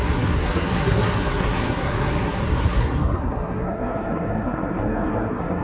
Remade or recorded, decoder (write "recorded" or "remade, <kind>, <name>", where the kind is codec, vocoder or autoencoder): remade, codec, SNAC